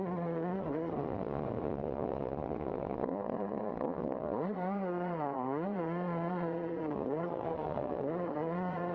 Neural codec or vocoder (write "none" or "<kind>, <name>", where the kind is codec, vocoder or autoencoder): vocoder, Vocos